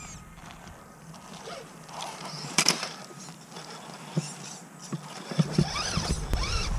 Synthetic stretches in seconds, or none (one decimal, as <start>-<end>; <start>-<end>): 0.4-3.0